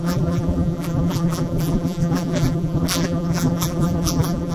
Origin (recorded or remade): remade